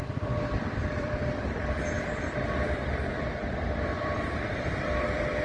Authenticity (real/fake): fake